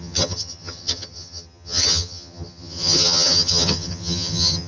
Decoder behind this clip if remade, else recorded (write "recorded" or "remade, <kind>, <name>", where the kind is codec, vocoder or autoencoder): remade, vocoder, HiFi-GAN